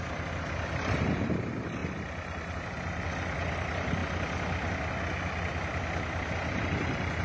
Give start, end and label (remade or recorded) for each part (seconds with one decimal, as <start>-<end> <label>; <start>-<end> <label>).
0.0-4.0 remade; 4.0-6.4 recorded; 6.4-7.2 remade